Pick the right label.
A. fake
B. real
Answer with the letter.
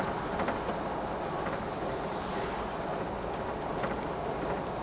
B